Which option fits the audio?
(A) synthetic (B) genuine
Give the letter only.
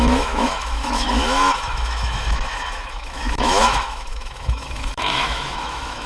A